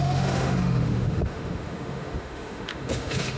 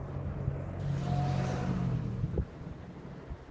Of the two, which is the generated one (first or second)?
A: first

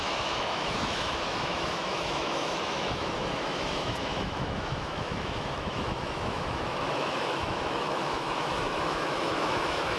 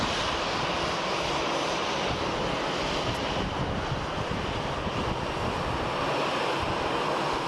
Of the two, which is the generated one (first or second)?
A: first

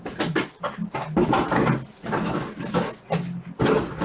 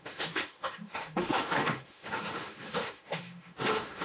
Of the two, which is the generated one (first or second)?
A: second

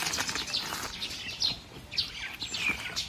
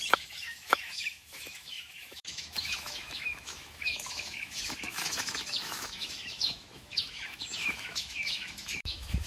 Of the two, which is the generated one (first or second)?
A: second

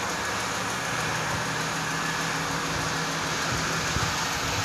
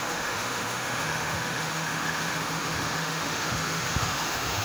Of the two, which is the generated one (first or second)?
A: second